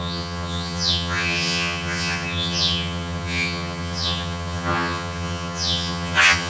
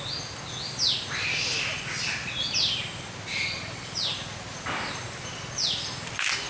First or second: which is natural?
second